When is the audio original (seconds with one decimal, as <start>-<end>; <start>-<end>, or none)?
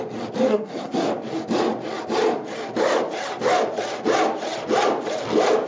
0.0-0.5; 1.1-5.7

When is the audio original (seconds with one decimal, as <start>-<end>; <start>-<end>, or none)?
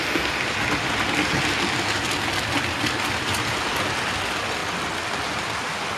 0.0-6.0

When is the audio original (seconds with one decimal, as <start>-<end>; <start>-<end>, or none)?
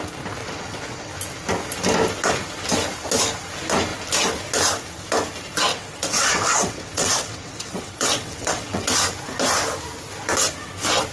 0.0-0.4; 1.1-5.7; 8.9-11.1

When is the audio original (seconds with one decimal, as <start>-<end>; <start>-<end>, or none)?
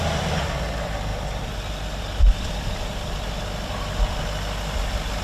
1.1-1.7